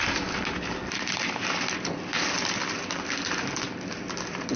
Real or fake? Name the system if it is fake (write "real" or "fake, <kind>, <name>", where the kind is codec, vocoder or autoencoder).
real